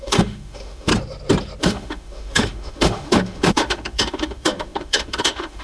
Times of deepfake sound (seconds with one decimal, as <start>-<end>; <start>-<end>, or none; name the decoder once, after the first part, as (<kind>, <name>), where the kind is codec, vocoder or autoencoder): 0.0-0.9 (autoencoder, DAC-VAE); 1.6-5.6